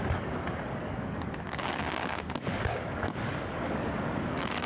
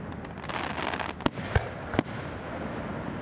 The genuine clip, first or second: second